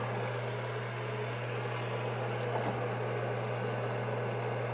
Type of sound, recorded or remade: recorded